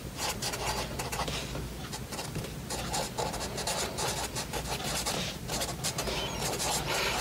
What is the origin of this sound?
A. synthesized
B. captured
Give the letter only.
B